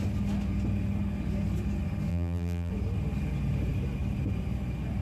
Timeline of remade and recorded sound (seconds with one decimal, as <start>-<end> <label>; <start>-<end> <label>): 0.0-2.1 recorded; 2.1-2.7 remade; 2.7-5.0 recorded